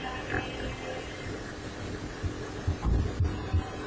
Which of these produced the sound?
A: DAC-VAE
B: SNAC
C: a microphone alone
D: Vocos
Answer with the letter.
C